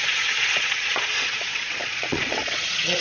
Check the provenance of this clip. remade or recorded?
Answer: remade